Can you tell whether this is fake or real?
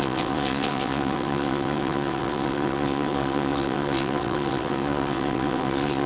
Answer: fake